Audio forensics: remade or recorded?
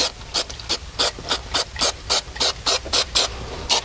recorded